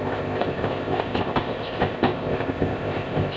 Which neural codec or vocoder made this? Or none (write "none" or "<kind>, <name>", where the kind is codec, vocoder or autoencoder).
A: codec, ZipCodec